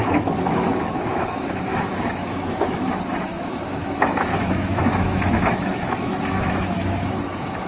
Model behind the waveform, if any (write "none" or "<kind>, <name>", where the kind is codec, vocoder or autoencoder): autoencoder, DAC-VAE